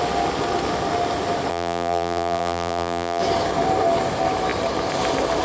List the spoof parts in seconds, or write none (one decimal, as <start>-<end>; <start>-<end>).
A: 1.5-3.2